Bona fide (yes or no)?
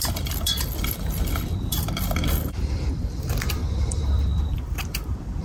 no